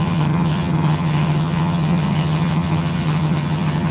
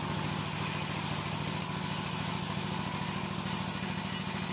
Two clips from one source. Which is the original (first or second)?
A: second